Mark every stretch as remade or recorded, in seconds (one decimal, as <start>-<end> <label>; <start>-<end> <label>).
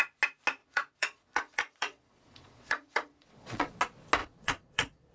0.0-0.6 recorded; 0.6-3.7 remade; 3.7-4.2 recorded; 4.2-5.1 remade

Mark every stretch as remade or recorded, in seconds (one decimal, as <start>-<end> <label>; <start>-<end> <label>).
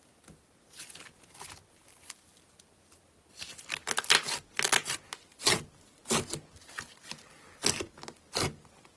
0.0-9.0 recorded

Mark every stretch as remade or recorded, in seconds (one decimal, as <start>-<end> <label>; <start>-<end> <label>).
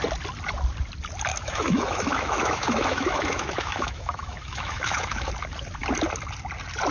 0.0-1.3 recorded; 1.3-5.3 remade; 5.3-6.9 recorded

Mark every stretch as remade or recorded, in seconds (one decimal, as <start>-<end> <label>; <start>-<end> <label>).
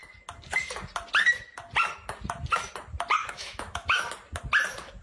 0.0-3.2 recorded; 3.2-4.1 remade; 4.1-5.0 recorded